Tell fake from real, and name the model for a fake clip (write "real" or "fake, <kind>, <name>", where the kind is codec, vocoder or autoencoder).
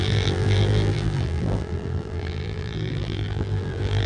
fake, vocoder, BigVGAN v2